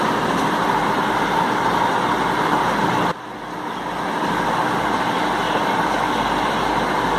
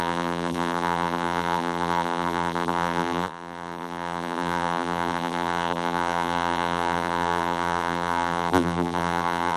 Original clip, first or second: first